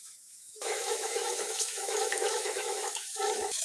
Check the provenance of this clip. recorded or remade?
remade